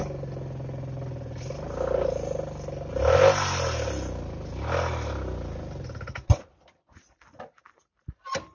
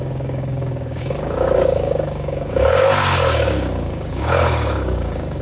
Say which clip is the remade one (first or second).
second